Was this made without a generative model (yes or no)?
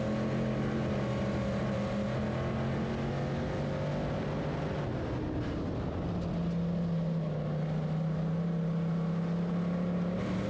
yes